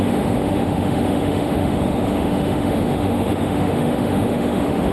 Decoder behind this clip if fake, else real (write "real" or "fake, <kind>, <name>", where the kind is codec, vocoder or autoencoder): fake, autoencoder, DAC-VAE